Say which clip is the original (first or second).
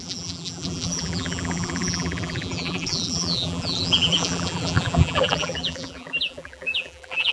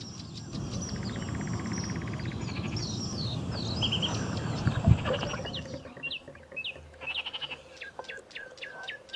second